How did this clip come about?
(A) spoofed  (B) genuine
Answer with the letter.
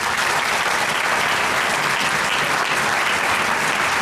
A